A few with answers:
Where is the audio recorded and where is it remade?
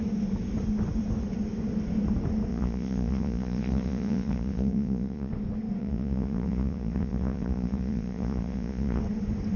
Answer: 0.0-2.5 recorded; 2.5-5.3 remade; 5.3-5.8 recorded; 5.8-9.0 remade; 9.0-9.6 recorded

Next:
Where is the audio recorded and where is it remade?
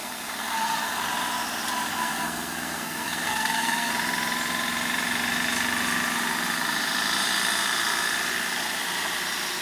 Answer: 0.0-1.0 remade; 1.0-1.9 recorded; 1.9-3.9 remade; 3.9-9.6 recorded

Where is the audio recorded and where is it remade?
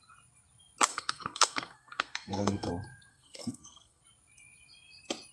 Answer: 0.0-0.9 recorded; 0.9-2.7 remade; 2.7-3.1 recorded; 3.1-4.0 remade; 4.0-5.3 recorded